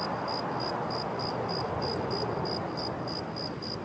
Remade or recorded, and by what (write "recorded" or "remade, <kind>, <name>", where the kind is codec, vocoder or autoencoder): recorded